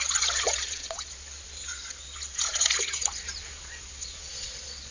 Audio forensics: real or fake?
fake